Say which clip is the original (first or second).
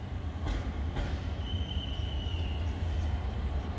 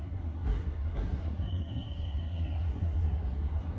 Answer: first